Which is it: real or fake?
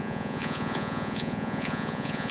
fake